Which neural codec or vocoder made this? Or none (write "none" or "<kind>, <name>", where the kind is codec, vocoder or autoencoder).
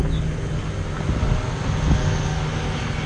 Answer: none